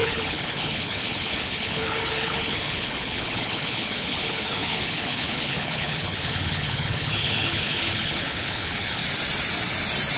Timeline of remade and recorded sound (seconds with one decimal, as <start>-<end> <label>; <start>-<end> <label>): 0.0-9.0 remade; 9.0-10.2 recorded